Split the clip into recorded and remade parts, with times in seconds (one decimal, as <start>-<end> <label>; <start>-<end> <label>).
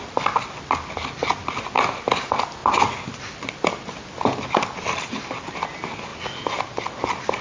0.0-7.4 recorded